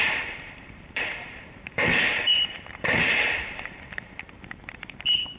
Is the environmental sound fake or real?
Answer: fake